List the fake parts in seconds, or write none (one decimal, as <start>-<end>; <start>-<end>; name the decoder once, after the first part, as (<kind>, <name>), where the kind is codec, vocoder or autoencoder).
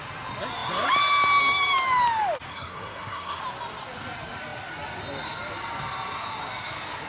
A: 2.5-3.4 (codec, SNAC)